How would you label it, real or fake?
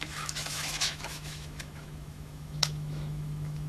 fake